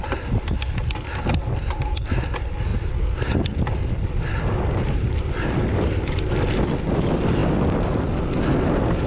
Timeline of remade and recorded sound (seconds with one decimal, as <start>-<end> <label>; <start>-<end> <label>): 0.0-2.7 recorded; 2.7-6.2 remade; 6.2-9.1 recorded